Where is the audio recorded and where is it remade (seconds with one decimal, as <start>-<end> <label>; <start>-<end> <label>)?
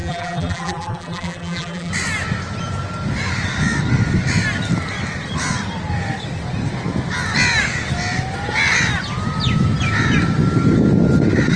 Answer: 0.0-1.9 remade; 1.9-11.6 recorded